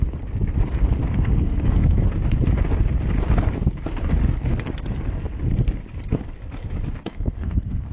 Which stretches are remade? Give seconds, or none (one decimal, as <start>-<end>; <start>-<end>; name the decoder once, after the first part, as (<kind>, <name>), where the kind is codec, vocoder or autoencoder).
1.0-2.0 (codec, SNAC); 7.0-7.9